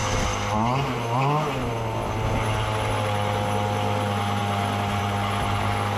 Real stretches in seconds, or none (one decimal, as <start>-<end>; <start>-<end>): 0.0-6.0